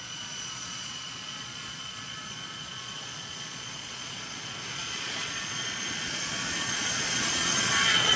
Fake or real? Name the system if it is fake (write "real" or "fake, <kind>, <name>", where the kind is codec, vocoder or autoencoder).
fake, vocoder, Vocos